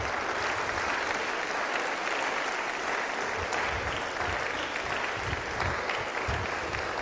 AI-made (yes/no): no